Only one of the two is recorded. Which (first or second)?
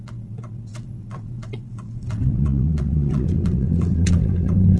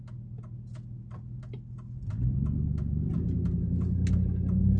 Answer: second